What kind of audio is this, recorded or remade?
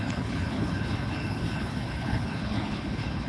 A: remade